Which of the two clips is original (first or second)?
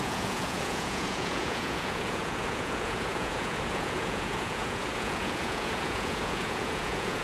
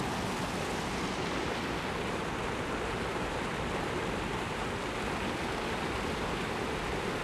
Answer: second